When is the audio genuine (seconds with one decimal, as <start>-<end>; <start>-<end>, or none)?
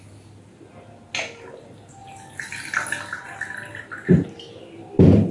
0.0-5.3